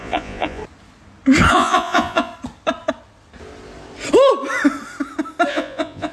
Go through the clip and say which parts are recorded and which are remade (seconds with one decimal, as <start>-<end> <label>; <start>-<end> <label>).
0.0-0.6 remade; 0.6-1.5 recorded; 1.5-2.3 remade; 2.3-5.5 recorded; 5.5-6.1 remade